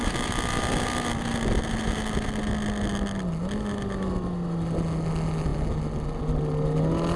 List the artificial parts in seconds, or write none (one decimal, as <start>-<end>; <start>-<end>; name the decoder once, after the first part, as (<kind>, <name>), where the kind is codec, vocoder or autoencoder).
none